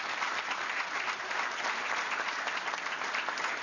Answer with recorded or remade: recorded